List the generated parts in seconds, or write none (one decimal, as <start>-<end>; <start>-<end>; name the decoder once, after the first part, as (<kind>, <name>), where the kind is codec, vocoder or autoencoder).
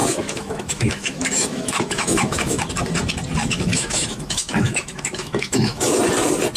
0.0-2.7 (autoencoder, DAC-VAE); 3.4-6.0